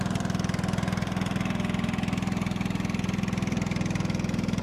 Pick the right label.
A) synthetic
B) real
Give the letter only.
B